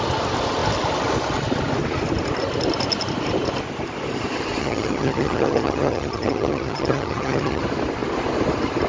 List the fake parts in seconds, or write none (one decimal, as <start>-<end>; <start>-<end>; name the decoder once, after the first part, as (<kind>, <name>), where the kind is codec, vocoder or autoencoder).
4.6-7.6 (vocoder, HiFi-GAN)